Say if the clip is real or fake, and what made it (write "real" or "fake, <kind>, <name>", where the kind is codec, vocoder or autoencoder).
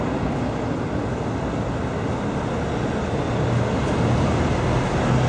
real